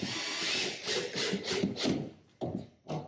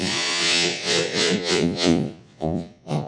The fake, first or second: second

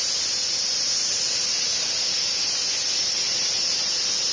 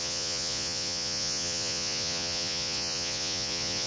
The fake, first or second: second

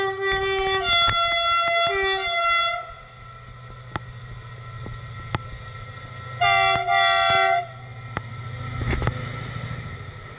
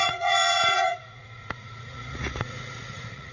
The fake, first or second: second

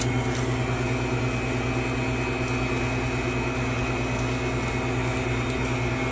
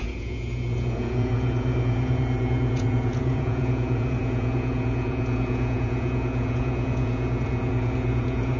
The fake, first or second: second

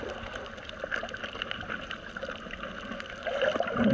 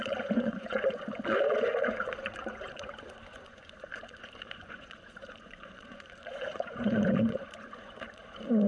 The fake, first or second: second